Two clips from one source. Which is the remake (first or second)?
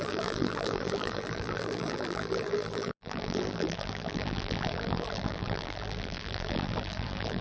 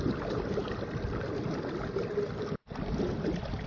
first